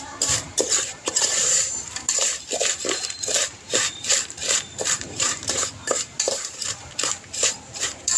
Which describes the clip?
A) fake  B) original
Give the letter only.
A